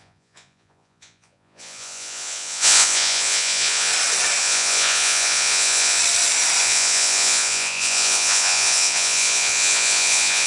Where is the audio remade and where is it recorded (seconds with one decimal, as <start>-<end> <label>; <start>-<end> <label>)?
0.0-3.9 remade; 3.9-4.4 recorded; 4.4-6.0 remade; 6.0-6.6 recorded; 6.6-10.5 remade